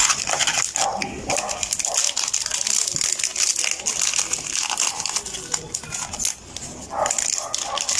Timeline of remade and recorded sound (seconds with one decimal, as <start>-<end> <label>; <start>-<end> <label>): 0.0-8.0 recorded

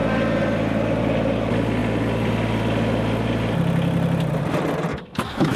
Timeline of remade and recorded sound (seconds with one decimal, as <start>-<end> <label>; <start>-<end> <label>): 0.0-4.9 recorded; 4.9-5.6 remade

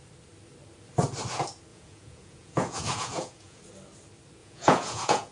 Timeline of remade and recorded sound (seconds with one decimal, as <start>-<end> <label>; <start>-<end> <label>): 0.0-1.7 recorded; 1.7-3.6 remade; 3.6-4.4 recorded; 4.4-5.3 remade

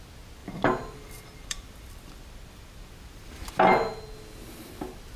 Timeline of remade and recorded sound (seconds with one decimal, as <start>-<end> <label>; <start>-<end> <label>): 0.0-0.4 recorded; 0.4-3.5 remade; 3.5-5.2 recorded